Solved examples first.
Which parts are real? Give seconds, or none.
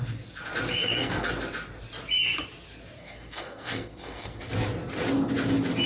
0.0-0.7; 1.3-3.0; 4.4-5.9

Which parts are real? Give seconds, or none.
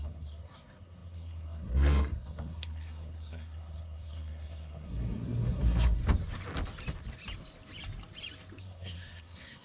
6.0-8.6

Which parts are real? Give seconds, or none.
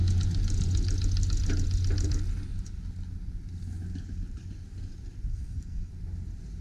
0.0-5.3; 5.9-6.6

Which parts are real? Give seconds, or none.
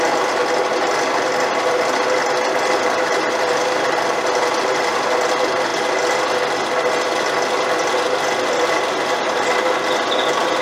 0.0-10.6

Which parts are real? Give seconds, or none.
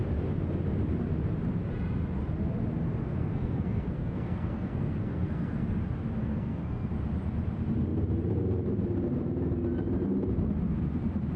0.0-3.1; 5.8-6.2; 6.9-11.4